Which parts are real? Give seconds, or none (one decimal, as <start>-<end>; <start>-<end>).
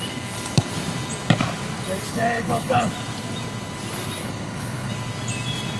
0.0-2.1; 2.9-4.2; 4.9-5.8